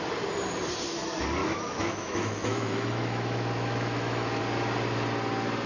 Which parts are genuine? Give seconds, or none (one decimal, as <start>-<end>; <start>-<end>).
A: 0.0-1.4; 4.4-5.7